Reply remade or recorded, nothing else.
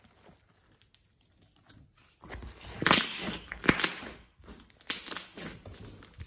recorded